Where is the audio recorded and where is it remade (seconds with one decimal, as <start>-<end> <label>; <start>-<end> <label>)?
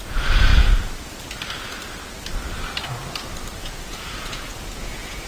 0.0-0.5 remade; 0.5-3.6 recorded; 3.6-5.3 remade